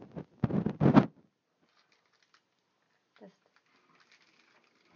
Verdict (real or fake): real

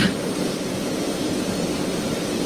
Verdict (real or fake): real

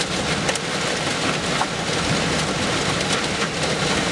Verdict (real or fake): real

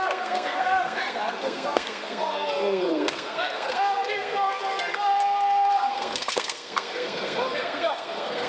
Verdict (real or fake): fake